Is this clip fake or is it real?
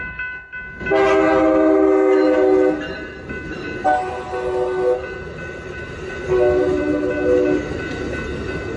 real